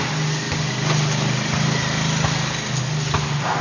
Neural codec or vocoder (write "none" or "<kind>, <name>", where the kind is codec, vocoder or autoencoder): none